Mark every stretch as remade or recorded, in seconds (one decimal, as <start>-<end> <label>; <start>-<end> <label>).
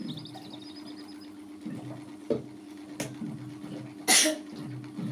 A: 0.0-5.1 recorded